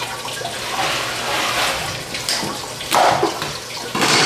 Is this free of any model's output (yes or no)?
yes